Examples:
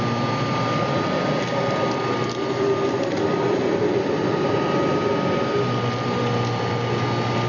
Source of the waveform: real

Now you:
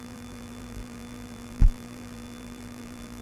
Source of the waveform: fake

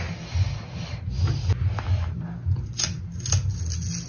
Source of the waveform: real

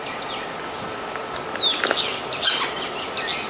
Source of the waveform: real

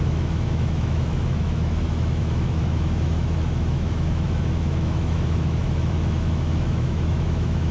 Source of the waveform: fake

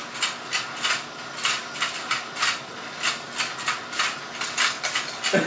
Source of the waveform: real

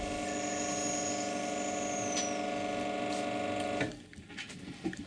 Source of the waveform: real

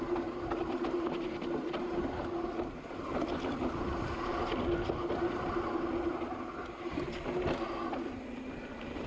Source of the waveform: real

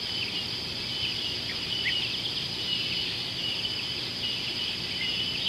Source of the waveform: real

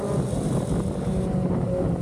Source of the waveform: real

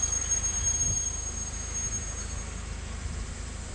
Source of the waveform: real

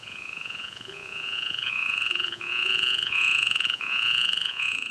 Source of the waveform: fake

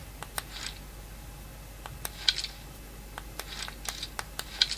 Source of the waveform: real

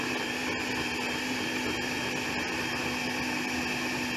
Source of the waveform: real